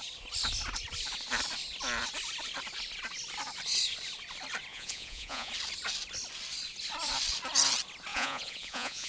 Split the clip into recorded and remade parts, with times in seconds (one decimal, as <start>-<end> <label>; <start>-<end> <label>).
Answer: 0.0-4.7 recorded; 4.7-5.5 remade; 5.5-8.1 recorded; 8.1-9.1 remade